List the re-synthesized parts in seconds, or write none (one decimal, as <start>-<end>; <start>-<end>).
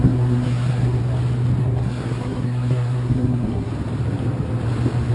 0.0-1.0; 1.6-3.7